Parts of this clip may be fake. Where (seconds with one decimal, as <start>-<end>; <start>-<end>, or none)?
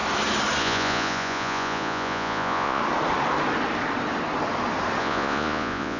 0.6-2.8; 5.0-6.0